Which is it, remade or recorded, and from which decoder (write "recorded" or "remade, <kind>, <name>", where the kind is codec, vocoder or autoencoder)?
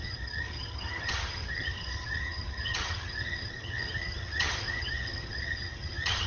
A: remade, vocoder, HiFi-GAN